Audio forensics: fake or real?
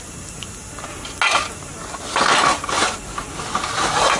real